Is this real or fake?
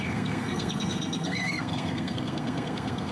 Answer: fake